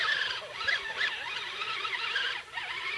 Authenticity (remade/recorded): remade